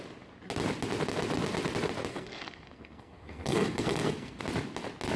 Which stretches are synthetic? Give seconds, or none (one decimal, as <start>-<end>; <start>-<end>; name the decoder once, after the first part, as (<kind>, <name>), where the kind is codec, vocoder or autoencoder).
2.1-4.4 (codec, SNAC)